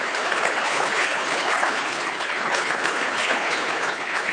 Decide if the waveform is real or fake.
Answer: fake